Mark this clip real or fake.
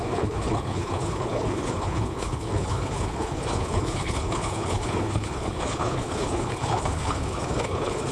fake